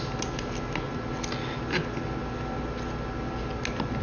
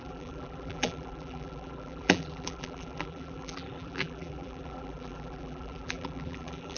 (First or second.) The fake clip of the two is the second